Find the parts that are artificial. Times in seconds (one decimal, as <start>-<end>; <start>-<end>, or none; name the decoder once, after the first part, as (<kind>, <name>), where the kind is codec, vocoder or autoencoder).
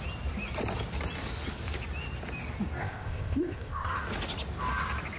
2.8-3.9 (codec, ZipCodec)